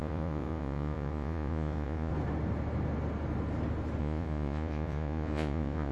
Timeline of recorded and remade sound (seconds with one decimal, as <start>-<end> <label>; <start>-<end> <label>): 0.0-2.1 remade; 2.1-4.0 recorded; 4.0-5.9 remade